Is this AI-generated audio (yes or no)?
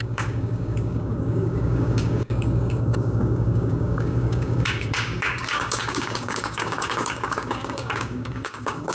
yes